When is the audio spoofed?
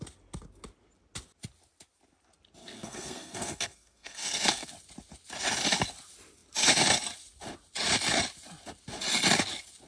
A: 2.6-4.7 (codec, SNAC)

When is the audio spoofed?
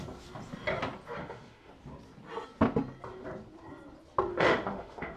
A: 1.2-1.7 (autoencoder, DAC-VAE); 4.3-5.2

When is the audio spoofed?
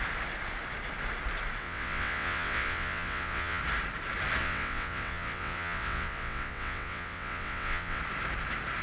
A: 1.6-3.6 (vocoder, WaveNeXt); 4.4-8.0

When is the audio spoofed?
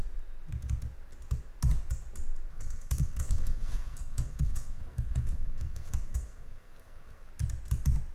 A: 2.5-7.3 (codec, SNAC)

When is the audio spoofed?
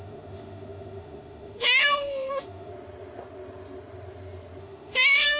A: 0.0-2.7 (autoencoder, DAC-VAE); 4.6-5.4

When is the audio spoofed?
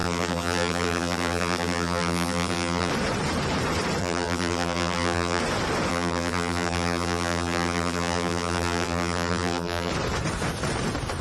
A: 0.0-2.9 (vocoder, BigVGAN v2); 4.0-5.4; 5.9-9.9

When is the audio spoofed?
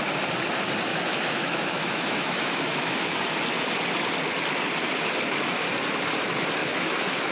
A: 0.9-3.2 (autoencoder, DAC-VAE); 6.6-7.3